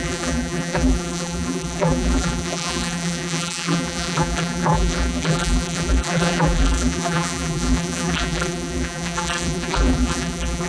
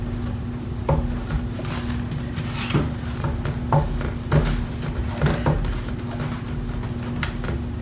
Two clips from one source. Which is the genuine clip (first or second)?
second